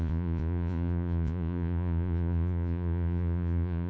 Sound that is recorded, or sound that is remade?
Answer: remade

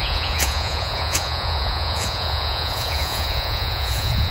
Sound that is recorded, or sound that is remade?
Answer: remade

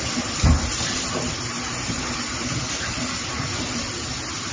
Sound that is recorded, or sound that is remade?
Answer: recorded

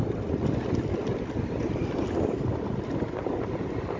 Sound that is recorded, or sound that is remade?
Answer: recorded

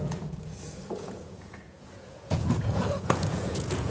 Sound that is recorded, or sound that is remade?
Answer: remade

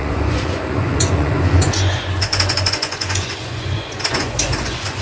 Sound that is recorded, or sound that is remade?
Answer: remade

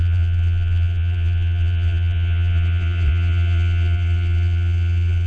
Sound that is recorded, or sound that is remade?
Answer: remade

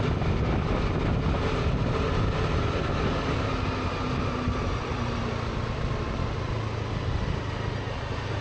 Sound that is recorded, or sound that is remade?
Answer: recorded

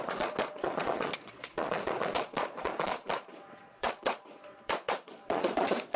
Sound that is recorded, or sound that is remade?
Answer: remade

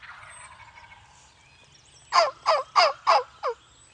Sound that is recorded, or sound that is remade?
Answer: recorded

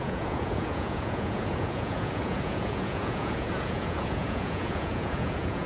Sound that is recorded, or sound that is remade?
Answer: remade